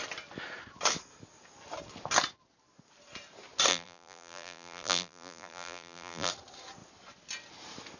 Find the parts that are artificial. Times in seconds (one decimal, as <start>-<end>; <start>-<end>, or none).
3.7-6.3